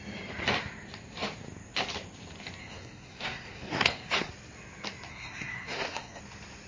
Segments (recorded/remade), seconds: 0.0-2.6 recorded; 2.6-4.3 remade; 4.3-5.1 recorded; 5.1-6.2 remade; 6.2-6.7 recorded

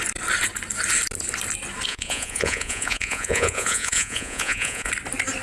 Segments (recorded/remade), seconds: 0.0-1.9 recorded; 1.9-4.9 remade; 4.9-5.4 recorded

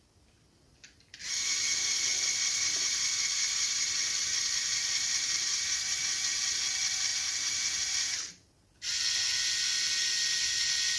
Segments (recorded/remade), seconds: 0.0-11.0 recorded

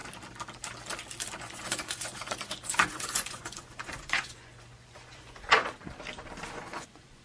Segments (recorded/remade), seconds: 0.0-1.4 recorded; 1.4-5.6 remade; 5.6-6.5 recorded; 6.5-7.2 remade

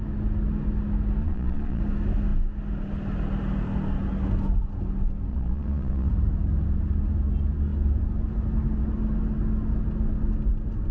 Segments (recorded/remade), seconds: 0.0-1.2 recorded; 1.2-1.8 remade; 1.8-5.3 recorded; 5.3-6.1 remade; 6.1-10.9 recorded